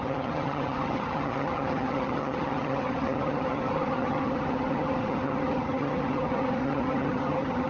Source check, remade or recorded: remade